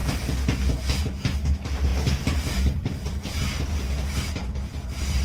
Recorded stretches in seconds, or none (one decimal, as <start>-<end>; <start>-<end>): 0.0-1.9; 3.4-5.2